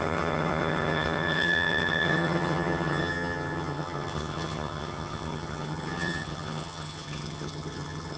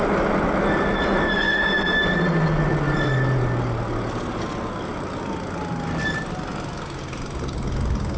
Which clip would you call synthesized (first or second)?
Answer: first